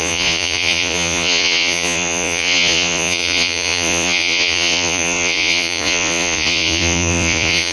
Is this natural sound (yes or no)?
no